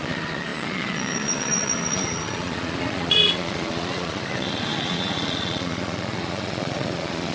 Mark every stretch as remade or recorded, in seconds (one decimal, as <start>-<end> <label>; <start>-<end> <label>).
0.0-7.3 remade